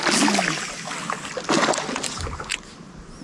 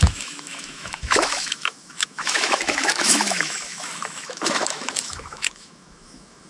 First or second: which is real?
first